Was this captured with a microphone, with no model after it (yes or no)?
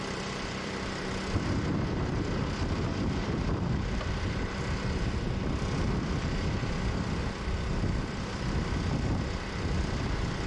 no